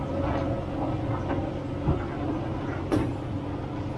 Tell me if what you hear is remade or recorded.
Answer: recorded